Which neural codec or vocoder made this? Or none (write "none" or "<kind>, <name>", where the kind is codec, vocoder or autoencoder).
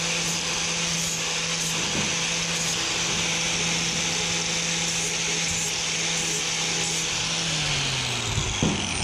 none